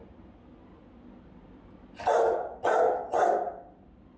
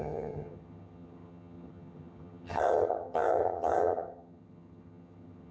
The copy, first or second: second